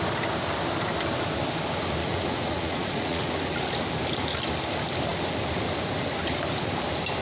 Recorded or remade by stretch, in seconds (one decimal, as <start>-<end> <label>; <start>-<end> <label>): 0.0-2.0 recorded; 2.0-3.3 remade; 3.3-7.2 recorded